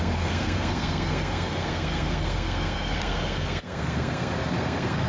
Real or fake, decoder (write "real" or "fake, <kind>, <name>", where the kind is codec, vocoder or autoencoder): fake, codec, SNAC